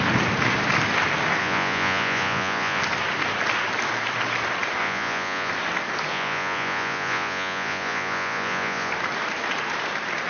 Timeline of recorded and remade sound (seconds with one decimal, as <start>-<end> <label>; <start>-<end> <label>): 0.0-1.4 recorded; 1.4-2.8 remade; 2.8-4.8 recorded; 4.8-5.5 remade; 5.5-6.1 recorded; 6.1-8.9 remade; 8.9-10.3 recorded